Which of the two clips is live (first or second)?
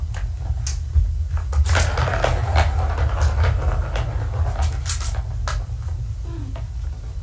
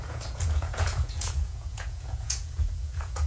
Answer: first